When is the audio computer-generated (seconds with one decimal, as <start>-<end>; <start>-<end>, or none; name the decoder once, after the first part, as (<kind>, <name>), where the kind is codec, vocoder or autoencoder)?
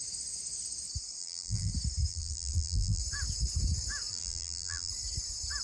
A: 1.2-1.7 (vocoder, BigVGAN v2); 2.1-3.0; 4.1-4.9